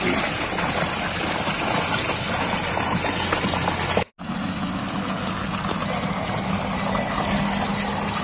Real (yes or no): yes